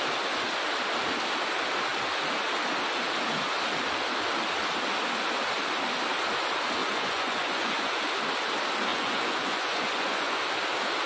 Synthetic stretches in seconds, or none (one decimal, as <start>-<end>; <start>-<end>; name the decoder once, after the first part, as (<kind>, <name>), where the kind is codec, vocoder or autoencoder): 6.8-8.0 (vocoder, Vocos); 8.9-10.4